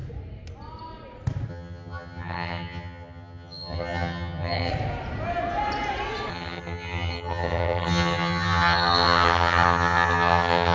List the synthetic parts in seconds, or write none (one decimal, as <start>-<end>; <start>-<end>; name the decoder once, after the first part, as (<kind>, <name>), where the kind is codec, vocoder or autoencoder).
1.5-4.7 (vocoder, HiFi-GAN); 6.3-10.7